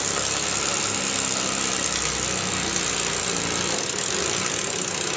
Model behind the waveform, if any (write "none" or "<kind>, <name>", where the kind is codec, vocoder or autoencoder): none